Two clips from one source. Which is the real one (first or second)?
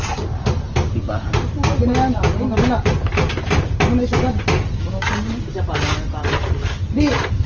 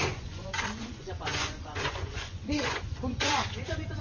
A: first